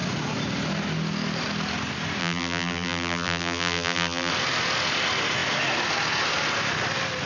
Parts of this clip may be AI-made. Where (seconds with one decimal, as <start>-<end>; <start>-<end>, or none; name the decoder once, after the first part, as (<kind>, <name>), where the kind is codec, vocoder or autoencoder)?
2.2-4.3 (vocoder, BigVGAN v2)